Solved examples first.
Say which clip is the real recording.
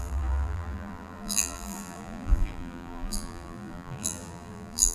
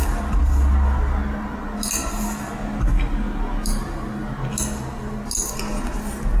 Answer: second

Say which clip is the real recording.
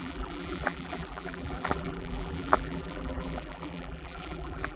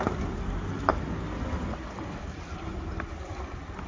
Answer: second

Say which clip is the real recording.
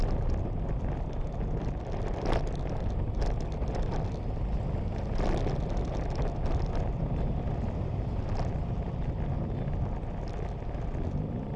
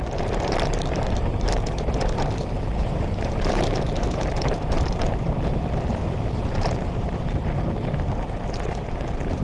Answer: first